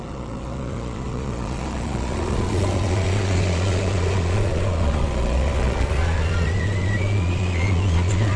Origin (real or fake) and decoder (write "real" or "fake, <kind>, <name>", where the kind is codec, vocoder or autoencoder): fake, vocoder, Vocos